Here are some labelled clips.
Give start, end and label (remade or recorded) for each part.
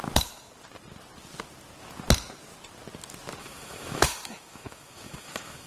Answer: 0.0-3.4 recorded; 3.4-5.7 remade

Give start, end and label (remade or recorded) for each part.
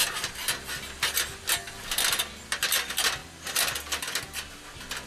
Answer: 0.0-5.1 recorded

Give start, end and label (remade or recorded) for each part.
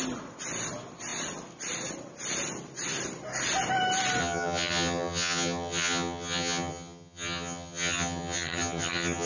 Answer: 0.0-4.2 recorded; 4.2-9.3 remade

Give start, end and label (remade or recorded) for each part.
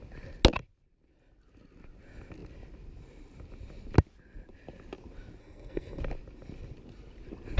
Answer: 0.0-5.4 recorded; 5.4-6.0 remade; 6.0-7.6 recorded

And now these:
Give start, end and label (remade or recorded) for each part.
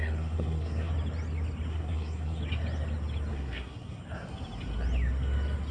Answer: 0.0-0.9 remade; 0.9-1.7 recorded; 1.7-2.4 remade; 2.4-3.3 recorded; 3.3-4.0 remade; 4.0-5.7 recorded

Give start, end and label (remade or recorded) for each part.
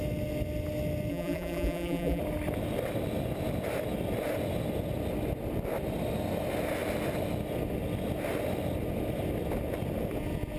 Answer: 0.0-1.1 recorded; 1.1-2.2 remade; 2.2-10.6 recorded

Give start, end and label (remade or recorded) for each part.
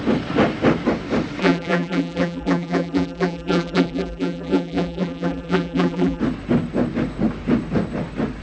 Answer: 0.0-1.4 recorded; 1.4-6.2 remade; 6.2-8.4 recorded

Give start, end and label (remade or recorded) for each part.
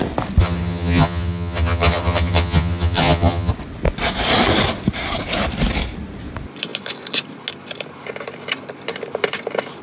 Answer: 0.0-0.4 recorded; 0.4-3.5 remade; 3.5-9.8 recorded